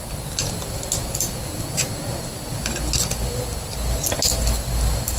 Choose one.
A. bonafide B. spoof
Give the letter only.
A